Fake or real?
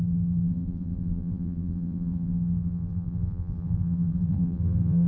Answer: fake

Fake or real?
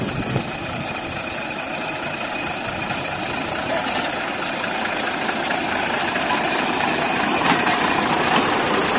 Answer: real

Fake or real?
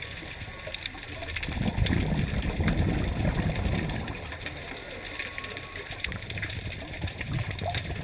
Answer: fake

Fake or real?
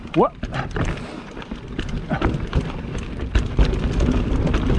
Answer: real